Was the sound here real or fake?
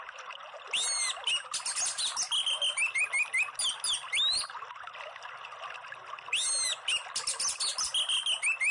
real